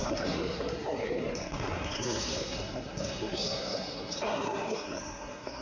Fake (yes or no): yes